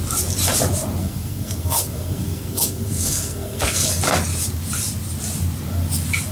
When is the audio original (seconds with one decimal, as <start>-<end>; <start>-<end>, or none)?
0.0-1.0; 4.0-6.3